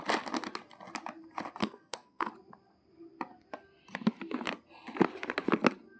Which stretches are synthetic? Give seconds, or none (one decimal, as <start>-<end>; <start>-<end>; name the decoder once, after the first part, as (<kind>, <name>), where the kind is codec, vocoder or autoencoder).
1.6-2.3 (codec, SNAC)